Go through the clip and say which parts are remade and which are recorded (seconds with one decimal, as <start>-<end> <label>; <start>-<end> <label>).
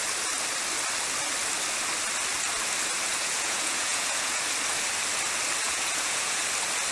0.0-3.1 recorded; 3.1-4.4 remade; 4.4-5.6 recorded; 5.6-6.4 remade; 6.4-6.9 recorded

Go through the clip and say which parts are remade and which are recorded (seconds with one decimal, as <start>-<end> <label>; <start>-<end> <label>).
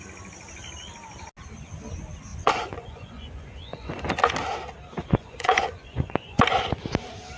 0.0-2.3 recorded; 2.3-4.1 remade; 4.1-5.0 recorded; 5.0-6.4 remade; 6.4-7.4 recorded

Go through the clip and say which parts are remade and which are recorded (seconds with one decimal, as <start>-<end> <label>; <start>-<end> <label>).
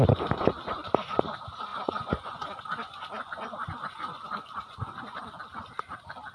0.0-1.7 recorded; 1.7-5.2 remade; 5.2-6.3 recorded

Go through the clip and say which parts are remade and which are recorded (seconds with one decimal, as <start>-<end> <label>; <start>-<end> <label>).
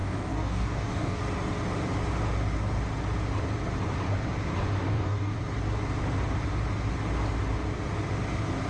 0.0-1.2 remade; 1.2-4.8 recorded; 4.8-5.4 remade; 5.4-8.7 recorded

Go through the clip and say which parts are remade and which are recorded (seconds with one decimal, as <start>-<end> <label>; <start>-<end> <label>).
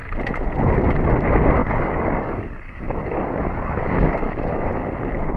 0.0-1.6 recorded; 1.6-4.8 remade; 4.8-5.4 recorded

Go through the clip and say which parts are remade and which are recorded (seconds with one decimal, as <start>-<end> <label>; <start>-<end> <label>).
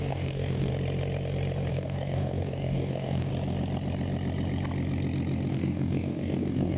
0.0-0.7 remade; 0.7-1.7 recorded; 1.7-3.3 remade; 3.3-5.5 recorded; 5.5-6.8 remade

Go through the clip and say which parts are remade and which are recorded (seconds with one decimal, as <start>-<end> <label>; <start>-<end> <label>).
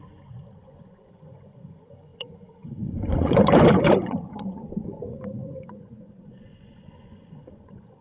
0.0-8.0 remade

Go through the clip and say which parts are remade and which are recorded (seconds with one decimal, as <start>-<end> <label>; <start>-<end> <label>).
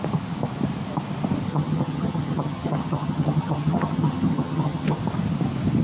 0.0-1.5 recorded; 1.5-5.0 remade; 5.0-5.8 recorded